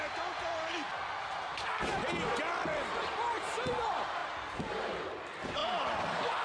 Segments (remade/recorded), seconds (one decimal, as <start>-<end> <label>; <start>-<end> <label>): 0.0-6.4 recorded